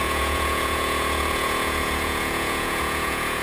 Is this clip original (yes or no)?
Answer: no